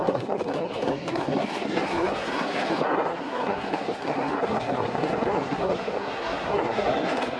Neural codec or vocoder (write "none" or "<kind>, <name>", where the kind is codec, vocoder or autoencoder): codec, SNAC